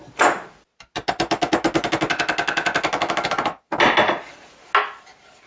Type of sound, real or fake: real